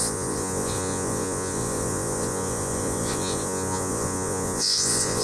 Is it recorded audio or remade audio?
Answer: remade